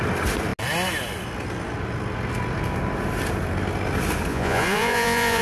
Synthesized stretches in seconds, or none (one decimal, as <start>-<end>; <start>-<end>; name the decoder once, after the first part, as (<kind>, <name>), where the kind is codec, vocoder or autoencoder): 4.3-5.4 (vocoder, Vocos)